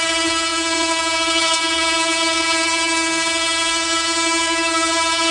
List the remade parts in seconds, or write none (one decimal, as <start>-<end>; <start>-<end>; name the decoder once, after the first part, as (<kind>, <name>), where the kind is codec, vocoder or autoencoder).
none